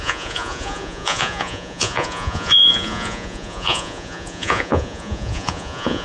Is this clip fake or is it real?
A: fake